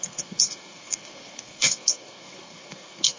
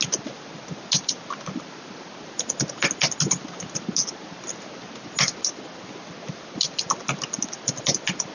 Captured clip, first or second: second